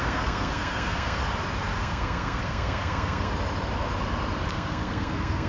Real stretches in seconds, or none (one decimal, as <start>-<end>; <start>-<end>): 1.2-1.8; 3.3-4.5